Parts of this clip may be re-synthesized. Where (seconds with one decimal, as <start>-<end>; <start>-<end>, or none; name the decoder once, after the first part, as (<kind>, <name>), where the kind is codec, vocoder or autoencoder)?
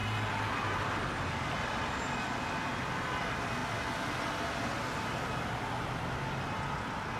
none